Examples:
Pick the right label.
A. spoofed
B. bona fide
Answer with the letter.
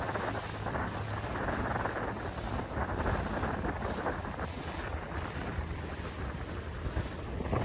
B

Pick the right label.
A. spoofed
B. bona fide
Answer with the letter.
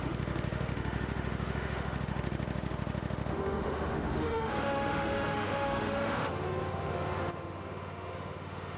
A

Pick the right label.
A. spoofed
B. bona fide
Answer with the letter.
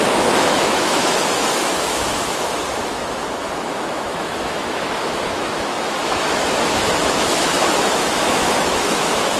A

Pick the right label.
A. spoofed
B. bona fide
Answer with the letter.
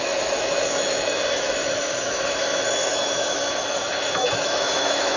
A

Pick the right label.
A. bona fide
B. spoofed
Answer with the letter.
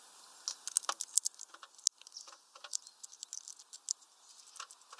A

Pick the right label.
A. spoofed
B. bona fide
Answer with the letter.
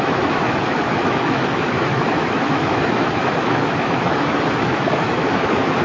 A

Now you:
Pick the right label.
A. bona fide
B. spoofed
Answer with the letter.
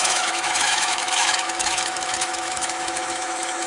B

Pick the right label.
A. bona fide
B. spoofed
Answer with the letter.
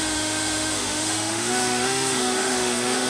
B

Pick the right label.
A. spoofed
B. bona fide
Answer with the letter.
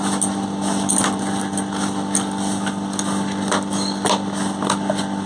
B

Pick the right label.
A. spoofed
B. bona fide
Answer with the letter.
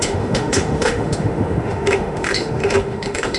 A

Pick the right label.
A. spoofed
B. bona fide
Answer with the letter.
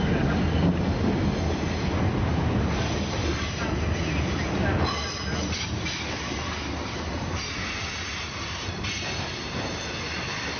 B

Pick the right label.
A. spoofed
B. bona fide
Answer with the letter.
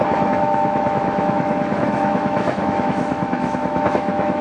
A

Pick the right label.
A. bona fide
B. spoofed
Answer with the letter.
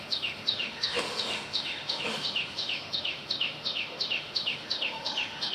B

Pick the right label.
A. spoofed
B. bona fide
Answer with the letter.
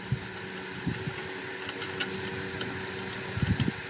B